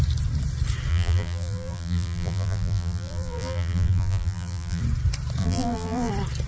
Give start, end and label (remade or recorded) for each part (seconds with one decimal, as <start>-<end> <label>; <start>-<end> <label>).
0.0-0.9 recorded; 0.9-4.8 remade; 4.8-5.4 recorded; 5.4-6.1 remade; 6.1-6.5 recorded

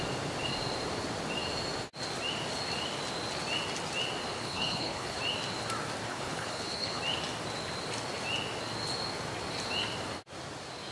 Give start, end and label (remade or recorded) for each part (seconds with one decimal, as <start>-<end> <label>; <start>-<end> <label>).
0.0-4.3 recorded; 4.3-5.2 remade; 5.2-6.1 recorded; 6.1-7.0 remade; 7.0-10.9 recorded

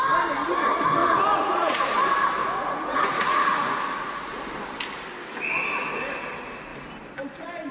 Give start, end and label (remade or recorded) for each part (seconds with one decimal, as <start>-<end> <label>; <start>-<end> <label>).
0.0-1.0 recorded; 1.0-1.8 remade; 1.8-2.4 recorded; 2.4-4.3 remade; 4.3-7.7 recorded

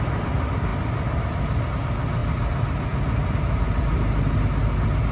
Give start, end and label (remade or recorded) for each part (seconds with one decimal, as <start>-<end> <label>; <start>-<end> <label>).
0.0-5.1 recorded

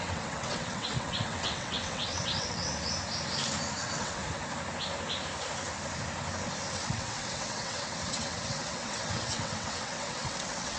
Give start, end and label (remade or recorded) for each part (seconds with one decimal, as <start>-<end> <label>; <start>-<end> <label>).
0.0-2.7 remade; 2.7-3.8 recorded; 3.8-4.2 remade; 4.2-6.7 recorded; 6.7-10.8 remade